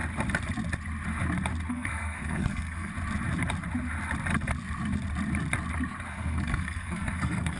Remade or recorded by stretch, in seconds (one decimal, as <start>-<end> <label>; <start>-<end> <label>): 0.0-1.7 recorded; 1.7-2.9 remade; 2.9-6.1 recorded; 6.1-7.6 remade